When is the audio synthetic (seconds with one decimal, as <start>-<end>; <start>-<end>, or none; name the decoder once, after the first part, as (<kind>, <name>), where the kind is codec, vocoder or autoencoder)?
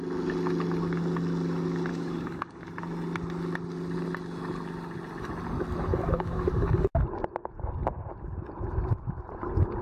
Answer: 1.9-2.6 (codec, DAC); 5.9-6.7